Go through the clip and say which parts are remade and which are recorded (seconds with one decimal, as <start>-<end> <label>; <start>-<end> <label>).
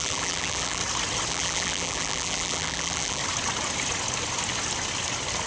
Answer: 0.0-0.8 remade; 0.8-1.3 recorded; 1.3-3.2 remade; 3.2-5.5 recorded